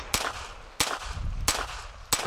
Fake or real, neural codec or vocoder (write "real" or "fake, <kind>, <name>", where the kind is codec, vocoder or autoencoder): real